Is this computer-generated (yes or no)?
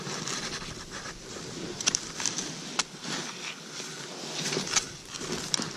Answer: no